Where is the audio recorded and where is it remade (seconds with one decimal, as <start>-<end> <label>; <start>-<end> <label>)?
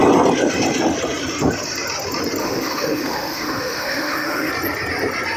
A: 0.0-2.4 recorded; 2.4-4.5 remade; 4.5-5.4 recorded